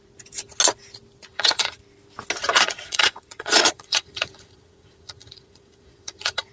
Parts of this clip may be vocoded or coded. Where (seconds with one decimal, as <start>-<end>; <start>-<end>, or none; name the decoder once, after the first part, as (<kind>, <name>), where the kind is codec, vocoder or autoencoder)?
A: 1.2-1.8 (vocoder, Vocos); 2.5-6.5